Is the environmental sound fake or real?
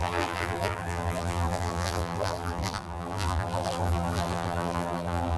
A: fake